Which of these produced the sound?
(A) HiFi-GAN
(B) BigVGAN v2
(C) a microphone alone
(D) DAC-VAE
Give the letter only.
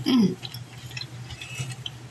C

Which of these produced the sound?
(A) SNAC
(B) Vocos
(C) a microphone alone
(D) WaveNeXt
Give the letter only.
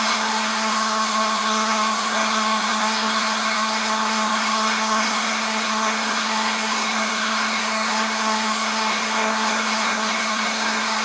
A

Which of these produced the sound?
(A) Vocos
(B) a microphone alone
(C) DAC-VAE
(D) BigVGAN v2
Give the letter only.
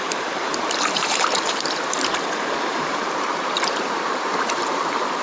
D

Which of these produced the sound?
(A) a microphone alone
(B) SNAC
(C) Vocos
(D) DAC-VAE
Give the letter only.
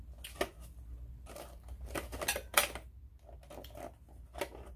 A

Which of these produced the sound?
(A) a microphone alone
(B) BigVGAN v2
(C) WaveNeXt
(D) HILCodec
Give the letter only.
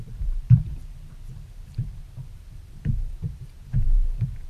B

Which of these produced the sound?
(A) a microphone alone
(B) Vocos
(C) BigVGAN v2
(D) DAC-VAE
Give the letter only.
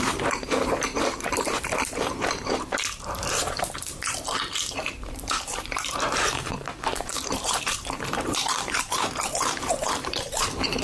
C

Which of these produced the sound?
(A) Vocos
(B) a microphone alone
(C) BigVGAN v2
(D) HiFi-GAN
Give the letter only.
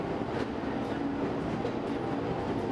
B